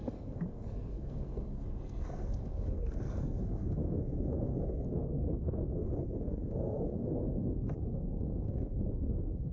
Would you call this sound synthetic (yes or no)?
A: yes